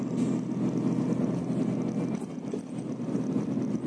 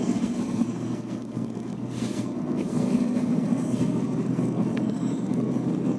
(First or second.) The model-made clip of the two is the second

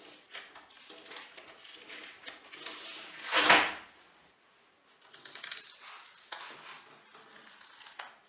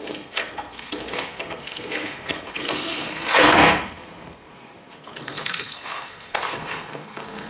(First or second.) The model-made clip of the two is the second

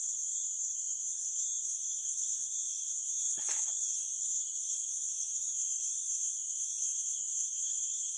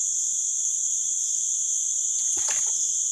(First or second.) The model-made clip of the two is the first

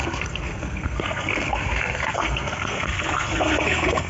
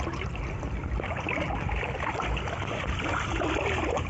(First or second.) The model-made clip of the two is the first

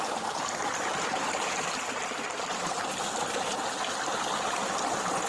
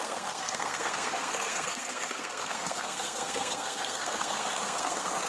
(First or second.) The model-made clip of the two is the second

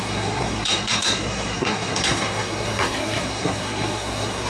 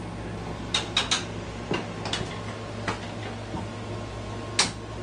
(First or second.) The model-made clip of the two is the first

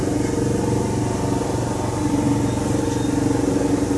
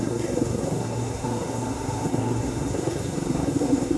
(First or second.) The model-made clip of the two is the second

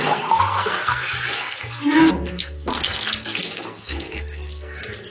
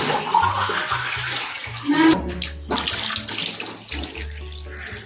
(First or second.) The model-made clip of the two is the first